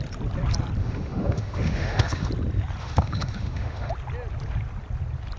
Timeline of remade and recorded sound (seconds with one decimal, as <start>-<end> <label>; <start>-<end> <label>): 0.0-0.8 recorded; 0.8-2.3 remade; 2.3-2.8 recorded; 2.8-3.9 remade; 3.9-5.4 recorded